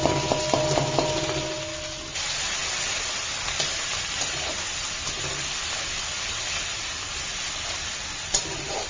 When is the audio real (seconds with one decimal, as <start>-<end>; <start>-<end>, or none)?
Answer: 0.0-8.9